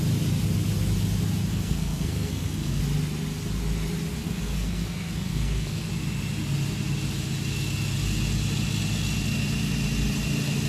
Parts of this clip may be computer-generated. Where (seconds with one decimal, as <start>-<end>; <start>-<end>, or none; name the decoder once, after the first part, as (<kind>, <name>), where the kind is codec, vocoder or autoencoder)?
1.5-2.8 (codec, SNAC); 4.2-5.9